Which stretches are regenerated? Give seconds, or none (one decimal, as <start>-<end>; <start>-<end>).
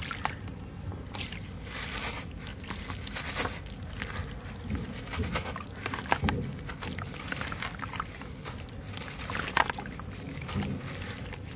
none